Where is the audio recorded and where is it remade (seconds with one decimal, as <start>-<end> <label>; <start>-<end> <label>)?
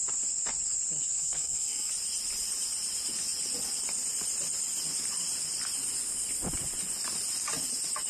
0.0-1.1 recorded; 1.1-1.9 remade; 1.9-8.1 recorded